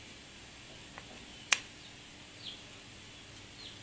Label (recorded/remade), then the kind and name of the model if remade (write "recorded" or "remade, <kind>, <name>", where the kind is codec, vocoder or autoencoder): recorded